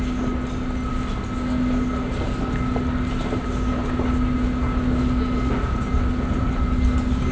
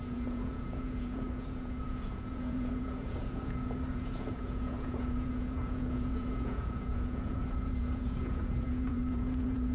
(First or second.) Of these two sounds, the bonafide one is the first